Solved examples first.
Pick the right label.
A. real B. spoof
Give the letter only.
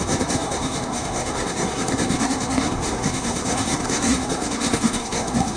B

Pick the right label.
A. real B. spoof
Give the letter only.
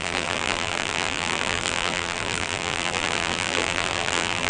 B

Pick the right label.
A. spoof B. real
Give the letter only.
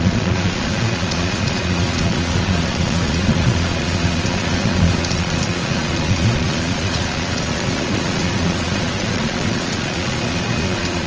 A